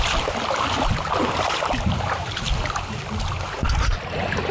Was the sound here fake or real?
real